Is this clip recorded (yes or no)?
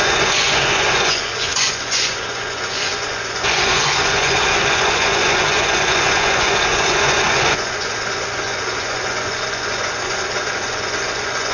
no